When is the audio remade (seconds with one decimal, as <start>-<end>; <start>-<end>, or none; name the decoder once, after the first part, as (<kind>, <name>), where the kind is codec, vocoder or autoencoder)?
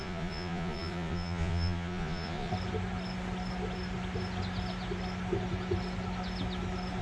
0.0-2.5 (vocoder, Vocos)